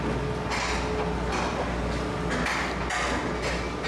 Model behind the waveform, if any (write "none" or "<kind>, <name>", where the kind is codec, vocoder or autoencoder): none